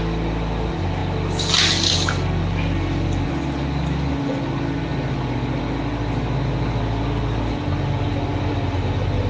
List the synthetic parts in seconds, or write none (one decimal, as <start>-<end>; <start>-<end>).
none